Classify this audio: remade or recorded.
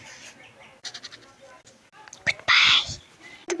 recorded